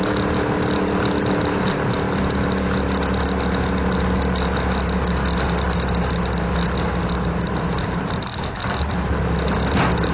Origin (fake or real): real